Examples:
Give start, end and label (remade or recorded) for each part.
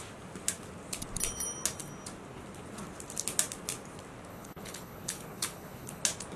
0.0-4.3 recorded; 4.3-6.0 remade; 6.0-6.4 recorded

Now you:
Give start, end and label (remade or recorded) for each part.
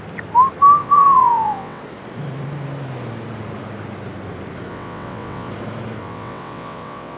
0.0-0.8 recorded; 0.8-1.8 remade; 1.8-4.7 recorded; 4.7-5.5 remade; 5.5-6.0 recorded; 6.0-7.2 remade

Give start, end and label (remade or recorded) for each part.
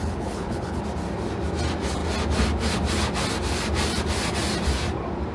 0.0-0.8 remade; 0.8-5.3 recorded